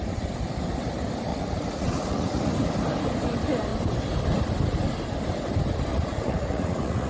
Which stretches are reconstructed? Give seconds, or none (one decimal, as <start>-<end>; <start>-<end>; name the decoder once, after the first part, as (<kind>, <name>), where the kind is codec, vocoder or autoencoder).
1.3-2.5 (vocoder, Vocos); 5.9-7.1